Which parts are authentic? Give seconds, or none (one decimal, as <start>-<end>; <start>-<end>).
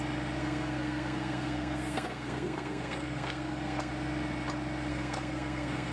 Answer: 0.0-0.4; 3.9-4.9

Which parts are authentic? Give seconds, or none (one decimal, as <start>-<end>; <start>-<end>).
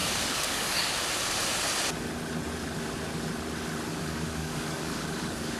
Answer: 0.8-3.9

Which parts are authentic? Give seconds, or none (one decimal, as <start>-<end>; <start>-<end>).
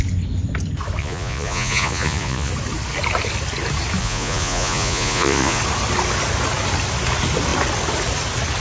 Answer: 0.0-1.0; 2.5-4.0; 5.6-8.6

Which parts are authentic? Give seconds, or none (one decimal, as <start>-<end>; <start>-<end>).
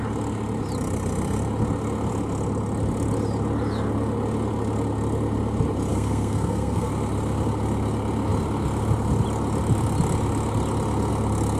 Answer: 0.0-5.9; 6.9-11.6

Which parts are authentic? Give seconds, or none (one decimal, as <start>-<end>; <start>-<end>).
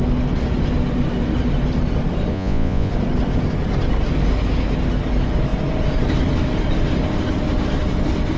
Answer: 0.0-2.3; 2.9-8.4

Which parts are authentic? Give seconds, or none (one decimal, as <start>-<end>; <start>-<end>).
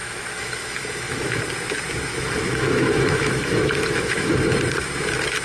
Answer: 1.4-2.1; 4.4-5.4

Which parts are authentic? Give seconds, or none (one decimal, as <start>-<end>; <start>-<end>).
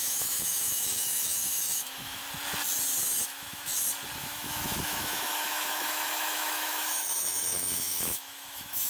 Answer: 2.2-3.2; 3.7-4.2